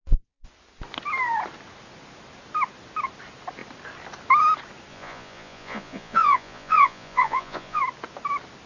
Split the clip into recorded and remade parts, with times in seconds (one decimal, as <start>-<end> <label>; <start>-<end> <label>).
0.0-4.9 recorded; 4.9-7.8 remade; 7.8-8.7 recorded